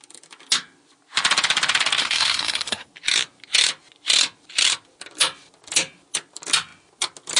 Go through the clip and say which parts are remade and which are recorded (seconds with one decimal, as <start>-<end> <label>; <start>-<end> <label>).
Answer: 0.0-2.0 recorded; 2.0-2.9 remade; 2.9-7.4 recorded